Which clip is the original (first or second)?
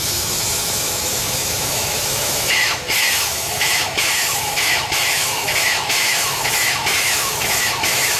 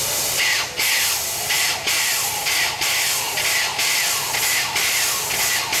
second